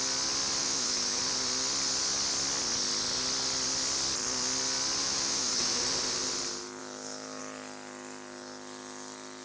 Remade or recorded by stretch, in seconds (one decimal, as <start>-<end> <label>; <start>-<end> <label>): 0.0-0.6 recorded; 0.6-1.2 remade; 1.2-5.0 recorded; 5.0-5.8 remade; 5.8-6.8 recorded; 6.8-7.4 remade; 7.4-9.4 recorded